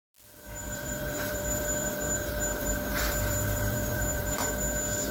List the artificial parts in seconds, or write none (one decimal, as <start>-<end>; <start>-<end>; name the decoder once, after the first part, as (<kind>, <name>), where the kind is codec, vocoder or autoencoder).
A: 0.6-1.9 (vocoder, BigVGAN v2); 2.3-4.6